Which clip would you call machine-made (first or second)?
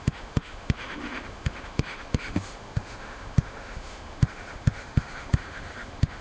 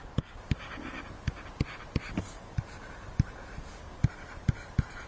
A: first